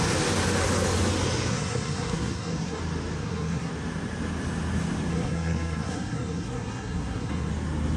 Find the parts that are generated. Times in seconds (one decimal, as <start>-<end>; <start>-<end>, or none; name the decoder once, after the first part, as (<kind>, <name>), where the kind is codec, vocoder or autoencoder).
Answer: 1.5-2.8 (codec, SNAC); 3.2-3.7; 5.1-7.5